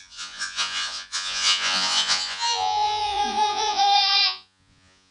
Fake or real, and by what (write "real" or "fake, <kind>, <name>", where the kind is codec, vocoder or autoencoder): fake, vocoder, Vocos